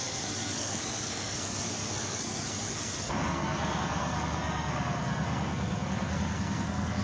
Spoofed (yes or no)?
yes